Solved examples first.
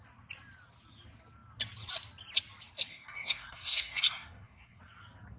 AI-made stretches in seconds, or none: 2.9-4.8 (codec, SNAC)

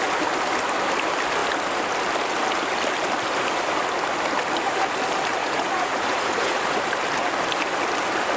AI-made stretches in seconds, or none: 5.4-6.8 (vocoder, Vocos)

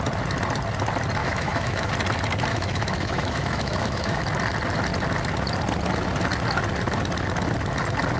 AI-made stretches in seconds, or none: 1.2-1.9 (autoencoder, DAC-VAE); 2.5-4.2

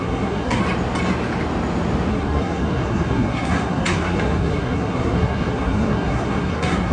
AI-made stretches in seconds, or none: 0.0-0.6 (codec, SNAC); 2.1-6.9

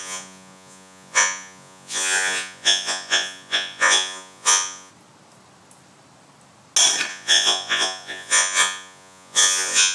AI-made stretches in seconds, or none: 0.0-4.9 (vocoder, Vocos); 7.1-9.9

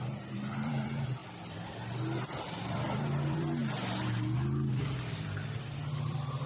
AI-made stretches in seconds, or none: 0.0-3.6 (vocoder, BigVGAN v2); 4.7-6.5

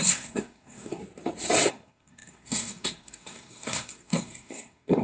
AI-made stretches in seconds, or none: 0.0-1.0 (codec, SNAC); 1.7-5.0